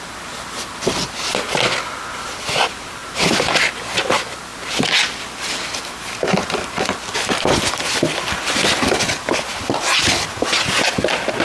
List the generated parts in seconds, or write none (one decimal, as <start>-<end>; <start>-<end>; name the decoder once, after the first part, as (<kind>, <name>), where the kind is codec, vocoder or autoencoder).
none